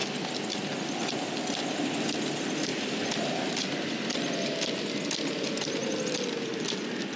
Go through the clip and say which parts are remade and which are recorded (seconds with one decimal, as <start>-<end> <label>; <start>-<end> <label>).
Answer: 0.0-7.2 recorded